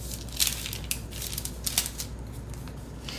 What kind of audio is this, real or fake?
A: real